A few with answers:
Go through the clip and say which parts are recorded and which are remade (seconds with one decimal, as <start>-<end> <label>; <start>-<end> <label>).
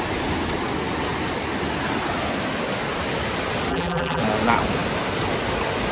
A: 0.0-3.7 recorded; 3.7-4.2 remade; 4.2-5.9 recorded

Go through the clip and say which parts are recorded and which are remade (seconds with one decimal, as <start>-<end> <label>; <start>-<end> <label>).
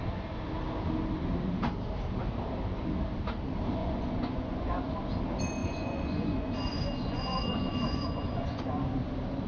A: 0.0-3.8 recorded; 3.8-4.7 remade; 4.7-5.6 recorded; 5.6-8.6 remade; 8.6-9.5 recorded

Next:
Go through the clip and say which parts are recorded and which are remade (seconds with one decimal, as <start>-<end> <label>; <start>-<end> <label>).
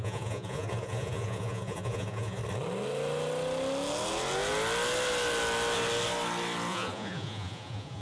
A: 0.0-2.4 remade; 2.4-6.7 recorded; 6.7-8.0 remade